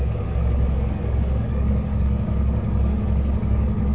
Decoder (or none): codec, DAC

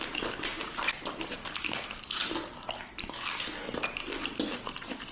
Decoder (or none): none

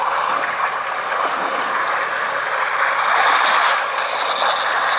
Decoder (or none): none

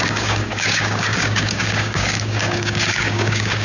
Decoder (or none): codec, DAC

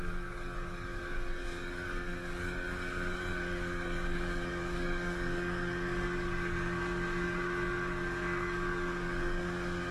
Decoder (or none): codec, DAC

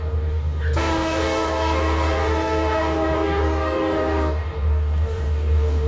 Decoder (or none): codec, DAC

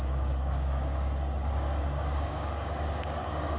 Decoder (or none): codec, DAC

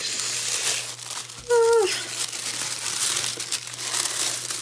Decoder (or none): none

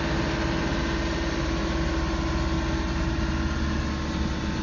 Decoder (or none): none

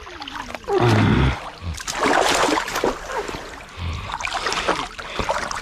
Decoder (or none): none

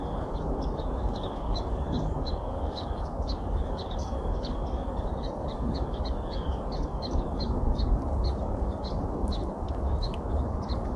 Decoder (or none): codec, DAC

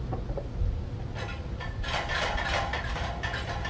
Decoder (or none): none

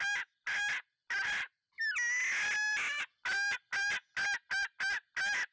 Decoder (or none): none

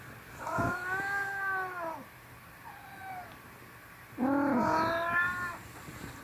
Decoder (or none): none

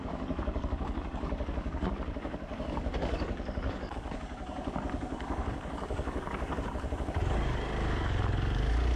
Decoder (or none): codec, DAC